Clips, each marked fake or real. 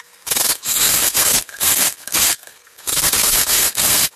fake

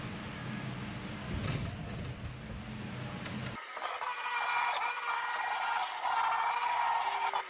real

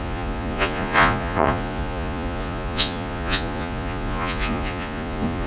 fake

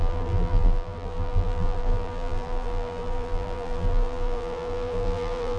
fake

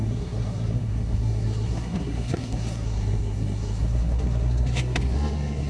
fake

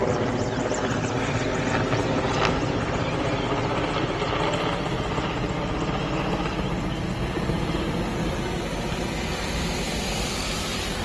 real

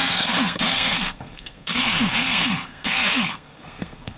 fake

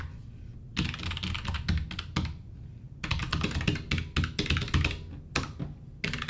real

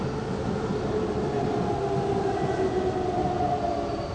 real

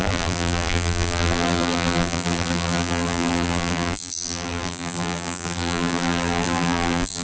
fake